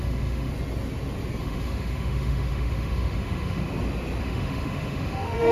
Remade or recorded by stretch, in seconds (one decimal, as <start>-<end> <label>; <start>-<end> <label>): 0.0-0.5 remade; 0.5-1.4 recorded; 1.4-3.7 remade; 3.7-4.2 recorded; 4.2-5.5 remade